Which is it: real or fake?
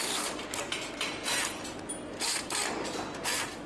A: real